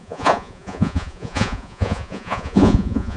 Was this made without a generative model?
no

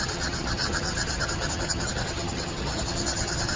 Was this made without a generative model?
no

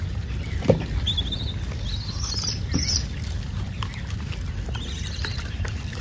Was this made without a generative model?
yes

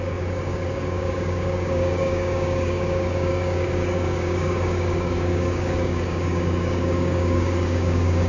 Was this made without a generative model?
no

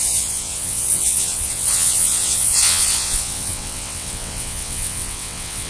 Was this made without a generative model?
no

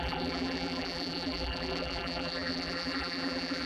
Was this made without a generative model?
no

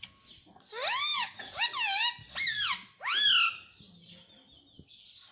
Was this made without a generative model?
yes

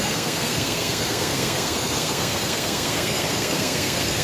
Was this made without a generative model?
no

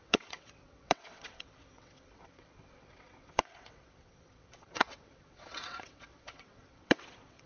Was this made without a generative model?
no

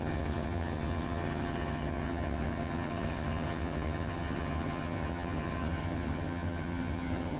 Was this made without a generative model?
no